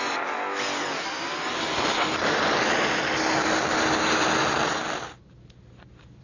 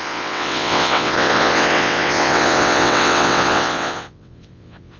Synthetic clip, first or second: second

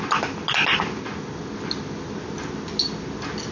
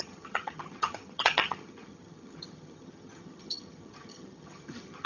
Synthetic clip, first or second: second